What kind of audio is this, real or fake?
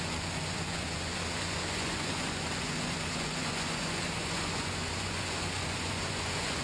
fake